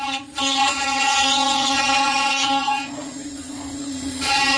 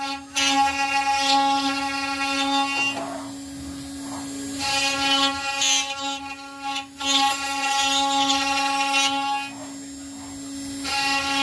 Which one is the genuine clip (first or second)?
second